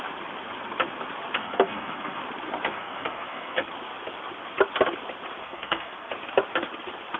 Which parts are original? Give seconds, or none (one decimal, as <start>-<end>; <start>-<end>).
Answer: 0.0-1.4; 2.2-2.7; 3.7-5.4; 6.1-7.2